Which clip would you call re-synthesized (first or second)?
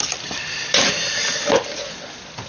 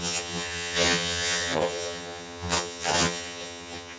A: second